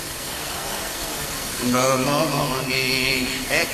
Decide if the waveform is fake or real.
fake